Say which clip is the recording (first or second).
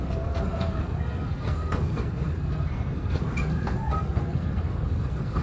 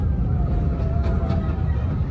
second